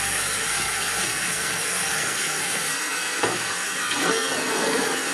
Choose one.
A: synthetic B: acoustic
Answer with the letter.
A